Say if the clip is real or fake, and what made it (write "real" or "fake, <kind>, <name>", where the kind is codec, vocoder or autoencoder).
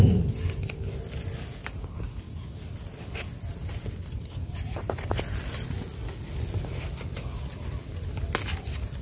real